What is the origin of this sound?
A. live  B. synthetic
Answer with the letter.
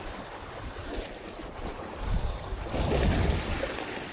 B